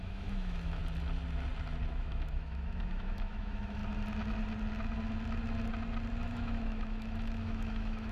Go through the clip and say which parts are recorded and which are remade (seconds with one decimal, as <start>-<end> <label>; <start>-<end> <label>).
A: 0.0-0.8 remade; 0.8-1.9 recorded; 1.9-3.8 remade; 3.8-6.2 recorded; 6.2-8.1 remade